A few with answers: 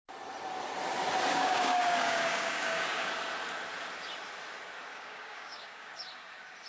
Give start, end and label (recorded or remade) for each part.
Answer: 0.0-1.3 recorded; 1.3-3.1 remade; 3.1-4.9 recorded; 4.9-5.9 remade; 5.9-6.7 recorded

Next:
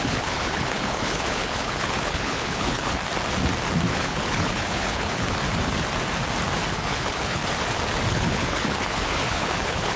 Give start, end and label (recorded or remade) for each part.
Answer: 0.0-3.0 remade; 3.0-3.9 recorded; 3.9-5.4 remade; 5.4-6.7 recorded; 6.7-7.4 remade; 7.4-8.1 recorded; 8.1-10.0 remade

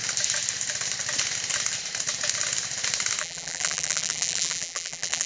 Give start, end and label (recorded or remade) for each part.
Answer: 0.0-3.2 recorded; 3.2-5.3 remade

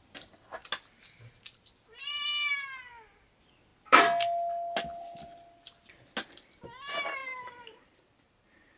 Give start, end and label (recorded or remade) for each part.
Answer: 0.0-7.2 recorded; 7.2-8.8 remade

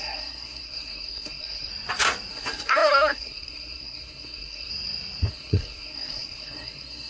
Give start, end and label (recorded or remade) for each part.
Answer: 0.0-1.7 remade; 1.7-2.3 recorded; 2.3-4.7 remade; 4.7-5.3 recorded; 5.3-7.1 remade

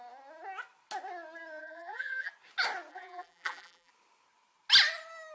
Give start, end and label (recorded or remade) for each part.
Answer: 0.0-1.6 recorded; 1.6-2.3 remade; 2.3-2.9 recorded; 2.9-3.9 remade; 3.9-5.3 recorded

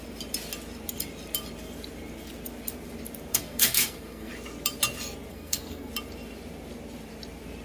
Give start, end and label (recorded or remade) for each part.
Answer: 0.0-3.3 recorded; 3.3-4.3 remade; 4.3-5.3 recorded; 5.3-5.9 remade; 5.9-7.6 recorded